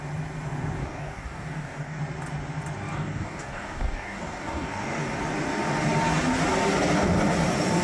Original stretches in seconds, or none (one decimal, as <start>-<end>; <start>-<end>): 0.0-0.8; 2.0-2.9; 5.2-7.8